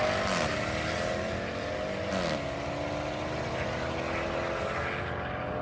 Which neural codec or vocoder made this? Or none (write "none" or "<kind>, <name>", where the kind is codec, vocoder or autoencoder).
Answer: none